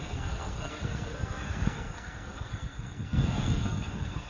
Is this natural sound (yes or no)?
no